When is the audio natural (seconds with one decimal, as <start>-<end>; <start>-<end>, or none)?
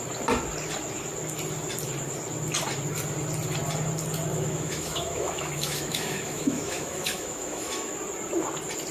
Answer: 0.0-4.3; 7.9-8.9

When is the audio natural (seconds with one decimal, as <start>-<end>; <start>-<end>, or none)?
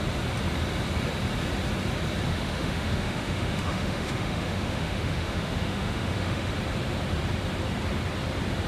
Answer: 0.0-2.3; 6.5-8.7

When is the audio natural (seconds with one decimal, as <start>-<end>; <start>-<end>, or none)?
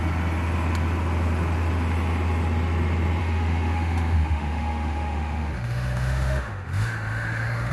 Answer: 0.0-3.2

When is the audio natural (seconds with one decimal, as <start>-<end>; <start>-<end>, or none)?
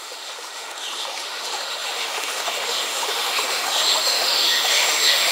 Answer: none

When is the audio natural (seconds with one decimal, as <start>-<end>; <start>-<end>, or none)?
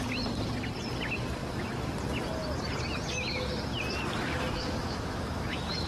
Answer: 0.0-4.3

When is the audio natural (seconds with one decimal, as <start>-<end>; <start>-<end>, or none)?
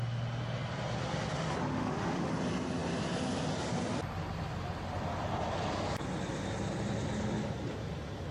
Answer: 0.0-1.7; 2.3-8.3